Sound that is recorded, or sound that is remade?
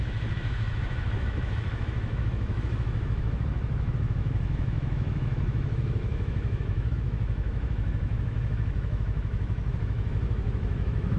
remade